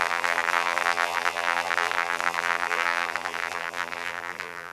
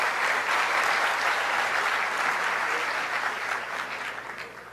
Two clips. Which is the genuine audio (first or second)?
second